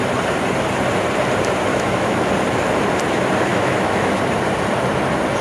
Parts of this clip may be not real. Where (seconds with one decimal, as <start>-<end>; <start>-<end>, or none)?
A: 1.7-2.3; 3.5-4.2